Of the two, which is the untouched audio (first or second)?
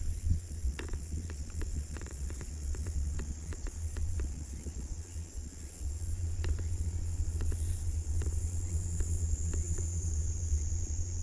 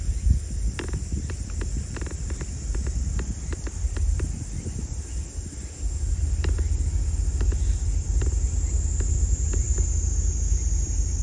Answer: second